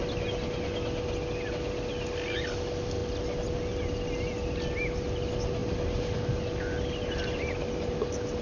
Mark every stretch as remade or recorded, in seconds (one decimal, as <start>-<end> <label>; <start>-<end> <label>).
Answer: 0.0-8.4 recorded